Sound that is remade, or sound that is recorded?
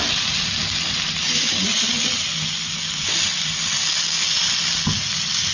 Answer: recorded